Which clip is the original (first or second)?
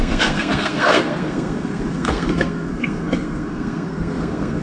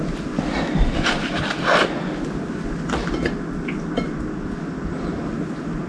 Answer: second